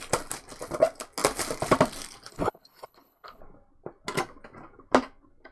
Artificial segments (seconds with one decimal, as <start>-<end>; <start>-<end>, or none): 2.3-3.4